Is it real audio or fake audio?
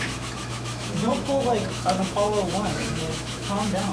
fake